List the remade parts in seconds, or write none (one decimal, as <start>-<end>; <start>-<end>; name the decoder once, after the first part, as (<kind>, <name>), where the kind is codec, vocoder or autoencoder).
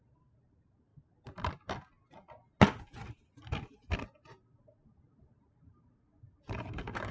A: 0.0-0.9 (vocoder, BigVGAN v2); 5.2-7.1